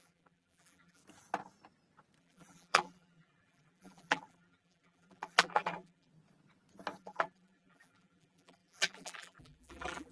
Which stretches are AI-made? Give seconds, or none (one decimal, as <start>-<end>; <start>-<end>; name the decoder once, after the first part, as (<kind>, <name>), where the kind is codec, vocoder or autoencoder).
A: 0.0-1.0 (vocoder, BigVGAN v2); 2.2-6.1; 7.0-10.1